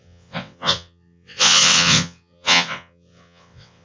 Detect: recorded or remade remade